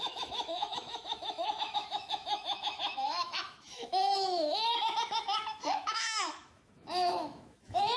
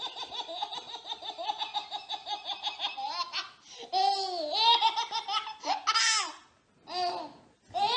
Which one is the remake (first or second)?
first